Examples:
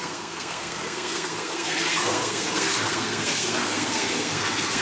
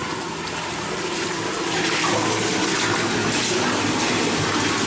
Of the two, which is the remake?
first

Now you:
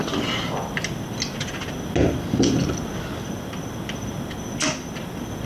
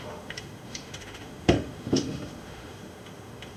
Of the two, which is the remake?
second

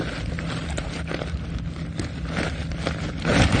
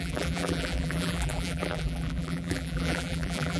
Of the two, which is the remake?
second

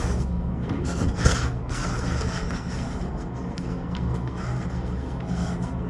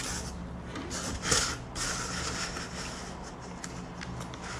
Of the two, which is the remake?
first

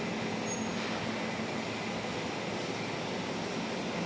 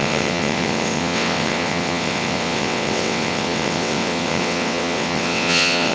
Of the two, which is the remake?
second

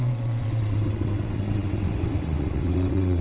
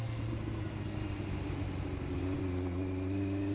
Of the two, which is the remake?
first